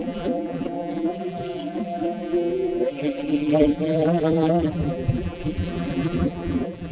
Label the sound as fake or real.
fake